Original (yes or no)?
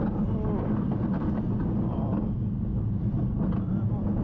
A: yes